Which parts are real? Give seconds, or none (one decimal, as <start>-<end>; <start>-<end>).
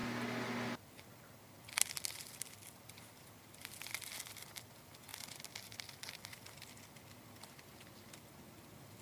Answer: 0.0-9.0